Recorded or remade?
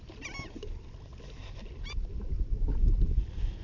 recorded